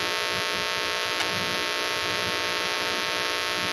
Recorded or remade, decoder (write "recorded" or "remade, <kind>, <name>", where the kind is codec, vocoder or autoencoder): recorded